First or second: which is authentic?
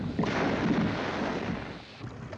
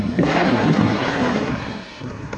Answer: first